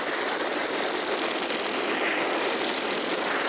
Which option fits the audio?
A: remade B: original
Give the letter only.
A